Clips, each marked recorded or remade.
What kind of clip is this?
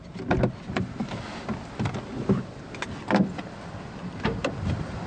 recorded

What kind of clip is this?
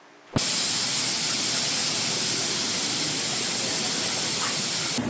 recorded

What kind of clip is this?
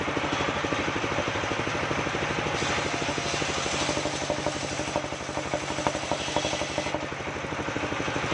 recorded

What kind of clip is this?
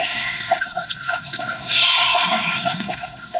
remade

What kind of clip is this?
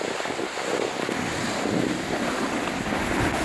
recorded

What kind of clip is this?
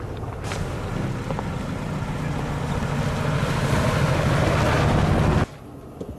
recorded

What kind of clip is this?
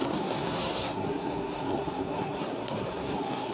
remade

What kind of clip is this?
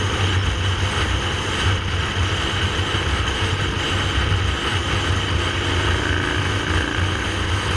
recorded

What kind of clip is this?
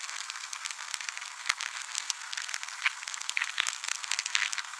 remade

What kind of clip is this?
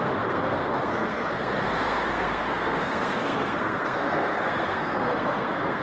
remade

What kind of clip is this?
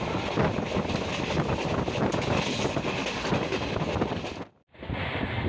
recorded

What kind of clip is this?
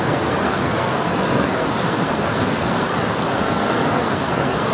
remade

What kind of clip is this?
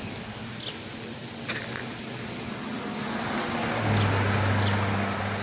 recorded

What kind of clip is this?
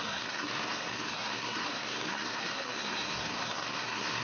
remade